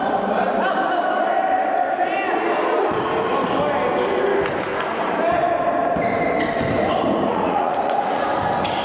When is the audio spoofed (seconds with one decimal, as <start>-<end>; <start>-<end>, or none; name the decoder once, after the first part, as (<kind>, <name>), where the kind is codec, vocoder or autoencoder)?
7.3-8.4 (vocoder, Vocos)